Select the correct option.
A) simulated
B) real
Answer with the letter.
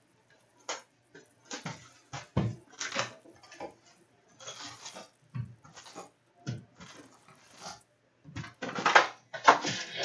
B